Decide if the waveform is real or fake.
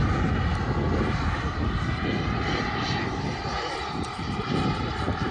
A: real